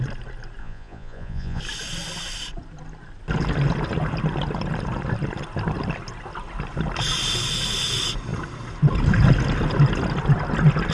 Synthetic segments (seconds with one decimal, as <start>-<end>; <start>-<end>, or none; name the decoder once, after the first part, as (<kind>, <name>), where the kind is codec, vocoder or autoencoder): 0.6-1.6 (vocoder, Vocos)